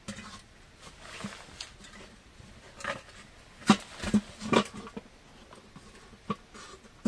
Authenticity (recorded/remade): recorded